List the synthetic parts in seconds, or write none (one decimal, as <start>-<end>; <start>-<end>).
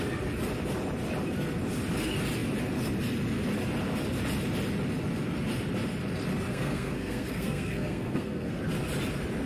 6.5-8.6